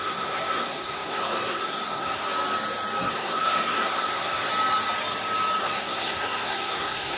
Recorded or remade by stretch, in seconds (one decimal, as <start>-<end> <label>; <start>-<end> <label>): 0.0-2.2 remade; 2.2-3.1 recorded; 3.1-4.5 remade; 4.5-5.6 recorded; 5.6-7.2 remade